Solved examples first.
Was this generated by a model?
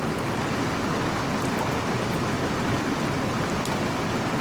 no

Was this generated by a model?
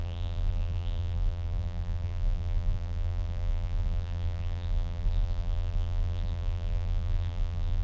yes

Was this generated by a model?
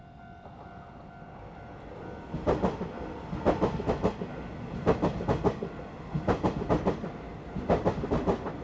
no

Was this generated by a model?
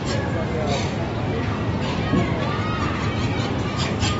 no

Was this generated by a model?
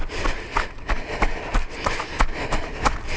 no